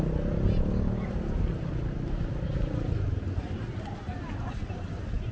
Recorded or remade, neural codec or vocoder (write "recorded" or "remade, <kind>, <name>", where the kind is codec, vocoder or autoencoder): recorded